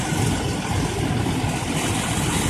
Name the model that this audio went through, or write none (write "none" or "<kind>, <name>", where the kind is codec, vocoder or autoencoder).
none